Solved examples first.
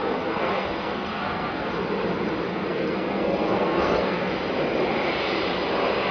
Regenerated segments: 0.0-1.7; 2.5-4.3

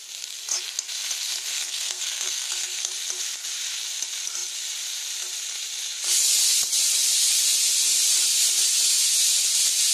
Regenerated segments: 1.5-2.9

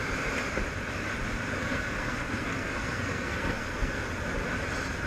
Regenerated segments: 1.6-4.0

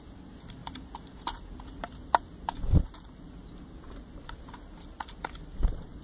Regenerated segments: none

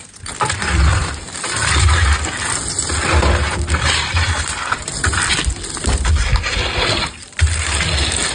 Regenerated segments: none

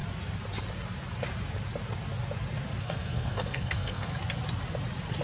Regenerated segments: 2.8-4.1

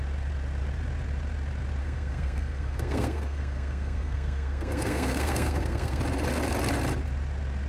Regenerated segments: 1.8-6.0

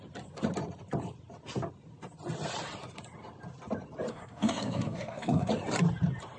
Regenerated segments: 4.1-5.5